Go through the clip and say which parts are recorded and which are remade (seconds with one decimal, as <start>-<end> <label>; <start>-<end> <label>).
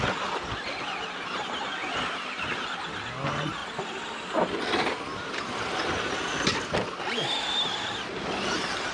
0.0-8.9 recorded